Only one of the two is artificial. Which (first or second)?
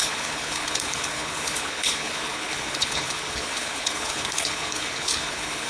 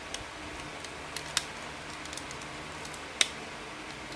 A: first